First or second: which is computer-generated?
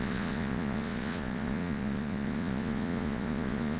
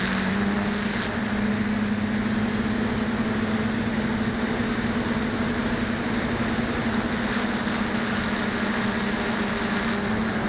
first